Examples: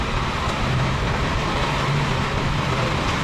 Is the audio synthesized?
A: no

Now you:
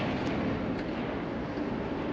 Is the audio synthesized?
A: no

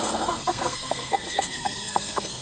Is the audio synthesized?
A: yes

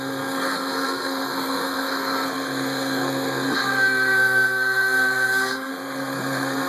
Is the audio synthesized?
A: yes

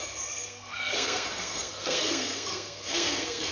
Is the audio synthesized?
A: yes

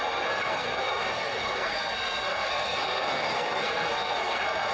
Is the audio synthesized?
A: yes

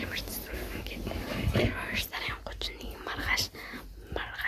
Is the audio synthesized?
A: no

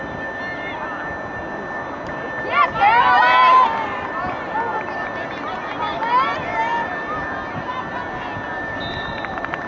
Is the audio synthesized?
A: no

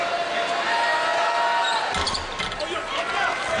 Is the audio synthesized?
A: no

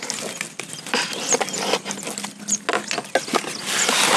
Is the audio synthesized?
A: no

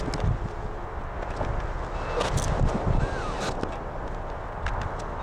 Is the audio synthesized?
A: no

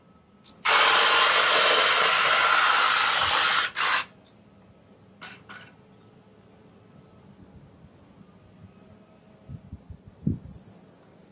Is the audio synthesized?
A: no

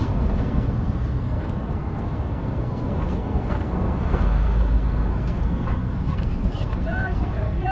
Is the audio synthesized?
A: yes